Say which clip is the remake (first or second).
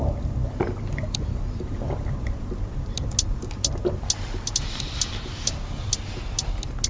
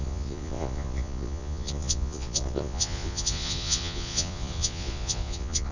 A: second